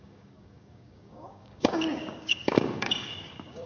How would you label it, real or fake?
fake